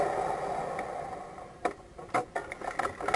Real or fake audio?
real